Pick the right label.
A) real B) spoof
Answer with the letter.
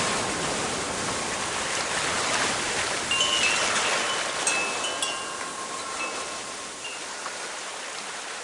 A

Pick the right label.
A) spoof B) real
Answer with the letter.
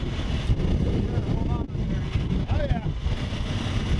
B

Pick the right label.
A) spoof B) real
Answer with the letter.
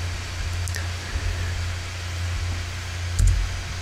B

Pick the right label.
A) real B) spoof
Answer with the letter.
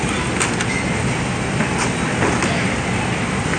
A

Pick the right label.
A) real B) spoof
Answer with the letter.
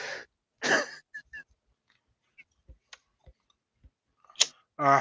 A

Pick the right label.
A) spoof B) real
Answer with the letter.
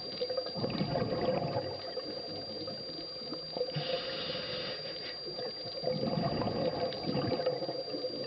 B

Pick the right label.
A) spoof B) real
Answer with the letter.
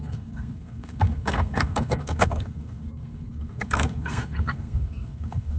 A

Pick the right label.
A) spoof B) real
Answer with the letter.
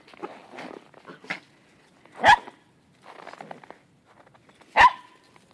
B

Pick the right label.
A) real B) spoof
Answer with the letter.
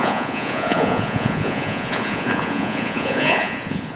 B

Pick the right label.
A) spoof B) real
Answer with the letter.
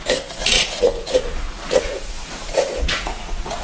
A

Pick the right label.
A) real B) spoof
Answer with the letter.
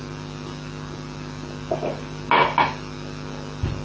A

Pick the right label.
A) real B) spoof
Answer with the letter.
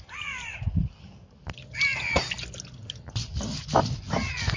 A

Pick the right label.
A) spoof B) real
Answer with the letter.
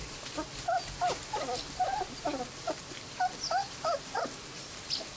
B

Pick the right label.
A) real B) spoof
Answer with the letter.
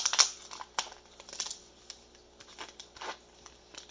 A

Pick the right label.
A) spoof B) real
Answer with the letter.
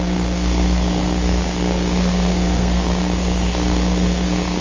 A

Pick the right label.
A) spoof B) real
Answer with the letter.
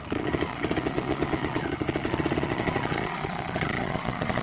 A